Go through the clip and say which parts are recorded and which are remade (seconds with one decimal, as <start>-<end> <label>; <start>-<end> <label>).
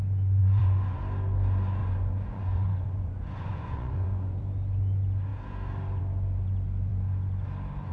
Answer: 0.0-0.4 recorded; 0.4-1.0 remade; 1.0-1.8 recorded; 1.8-4.4 remade; 4.4-7.9 recorded